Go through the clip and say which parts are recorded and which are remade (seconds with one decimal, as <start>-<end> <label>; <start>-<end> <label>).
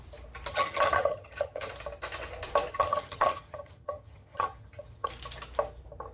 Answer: 0.0-0.5 recorded; 0.5-1.7 remade; 1.7-2.7 recorded; 2.7-5.1 remade; 5.1-6.1 recorded